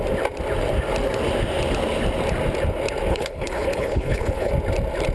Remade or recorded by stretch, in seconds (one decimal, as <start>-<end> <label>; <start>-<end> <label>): 0.0-3.1 recorded; 3.1-4.5 remade; 4.5-5.1 recorded